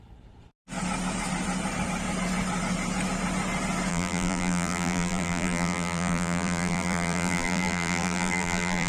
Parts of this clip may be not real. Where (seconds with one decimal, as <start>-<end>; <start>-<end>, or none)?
3.9-8.9